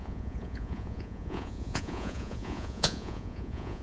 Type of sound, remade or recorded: remade